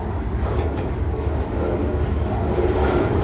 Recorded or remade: remade